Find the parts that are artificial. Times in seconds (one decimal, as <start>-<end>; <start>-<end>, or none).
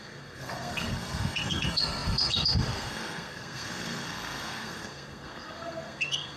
0.0-6.4